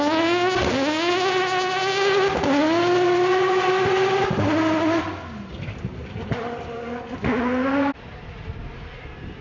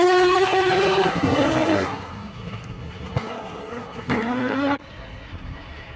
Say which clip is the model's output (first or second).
second